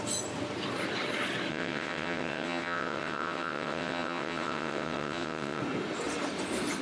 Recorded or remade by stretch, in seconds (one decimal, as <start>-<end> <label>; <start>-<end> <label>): 0.0-1.5 recorded; 1.5-5.6 remade; 5.6-6.8 recorded